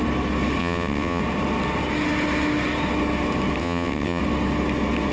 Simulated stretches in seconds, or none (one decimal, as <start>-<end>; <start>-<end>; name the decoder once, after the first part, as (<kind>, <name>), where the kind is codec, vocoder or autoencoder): 0.6-1.2 (vocoder, WaveNeXt); 3.6-4.2